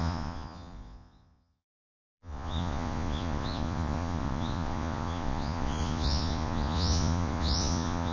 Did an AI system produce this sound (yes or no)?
yes